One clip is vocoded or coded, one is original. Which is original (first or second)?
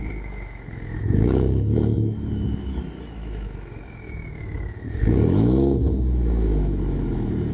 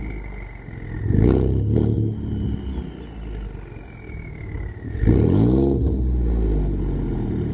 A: second